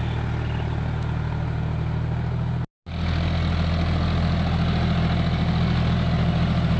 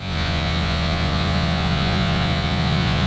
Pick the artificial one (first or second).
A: second